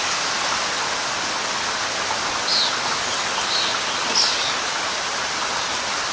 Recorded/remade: recorded